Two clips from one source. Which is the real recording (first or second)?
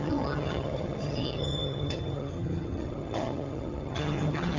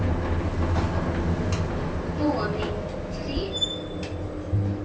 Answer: second